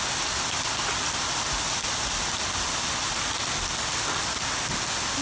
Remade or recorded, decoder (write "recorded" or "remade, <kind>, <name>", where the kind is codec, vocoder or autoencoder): recorded